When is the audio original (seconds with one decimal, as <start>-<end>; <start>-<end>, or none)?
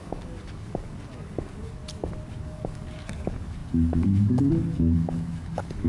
1.8-2.4